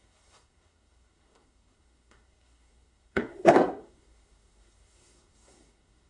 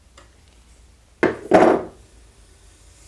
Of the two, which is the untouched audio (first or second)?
second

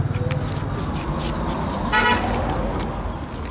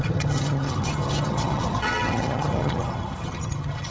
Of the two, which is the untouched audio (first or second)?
first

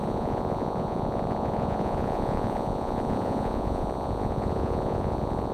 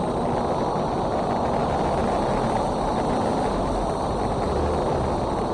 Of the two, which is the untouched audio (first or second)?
second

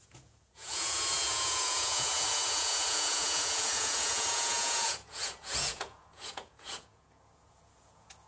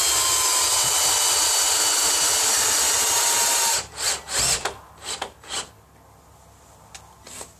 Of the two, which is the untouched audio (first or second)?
second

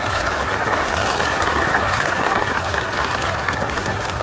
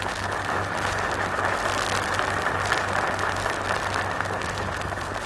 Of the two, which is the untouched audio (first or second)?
second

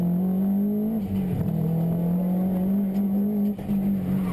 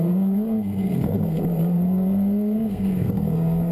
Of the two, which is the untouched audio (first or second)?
first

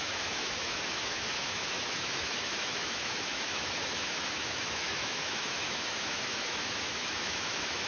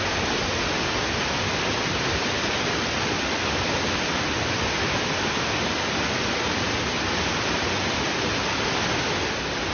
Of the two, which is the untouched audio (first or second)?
second